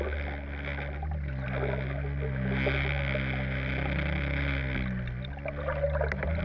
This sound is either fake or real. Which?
real